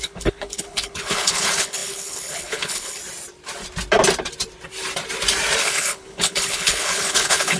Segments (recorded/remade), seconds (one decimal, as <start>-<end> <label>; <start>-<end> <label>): 0.0-3.0 remade; 3.0-5.6 recorded; 5.6-7.6 remade